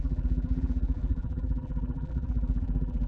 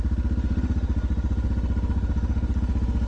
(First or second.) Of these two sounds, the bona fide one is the second